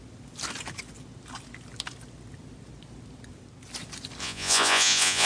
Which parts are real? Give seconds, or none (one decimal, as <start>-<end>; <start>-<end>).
0.0-4.2